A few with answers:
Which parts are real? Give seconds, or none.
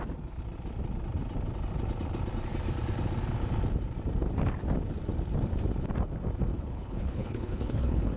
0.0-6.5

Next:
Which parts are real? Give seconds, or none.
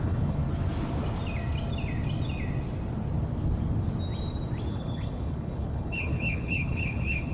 0.4-4.7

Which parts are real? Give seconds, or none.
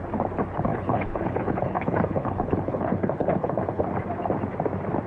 0.0-0.7; 3.8-5.1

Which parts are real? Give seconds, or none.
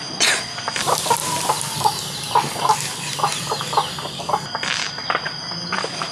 0.0-6.1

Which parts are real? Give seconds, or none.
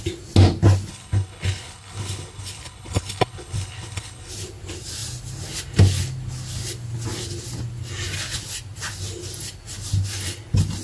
0.0-0.9; 4.3-10.8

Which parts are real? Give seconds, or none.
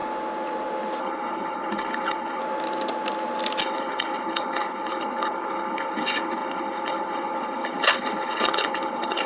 0.0-1.0; 2.4-3.6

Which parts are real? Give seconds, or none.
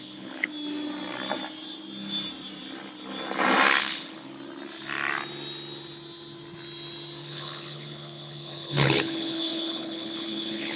0.5-3.8; 4.3-7.2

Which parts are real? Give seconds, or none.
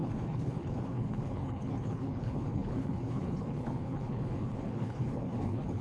none